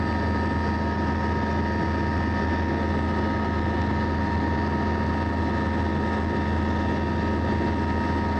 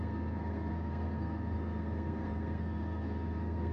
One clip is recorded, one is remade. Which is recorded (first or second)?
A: first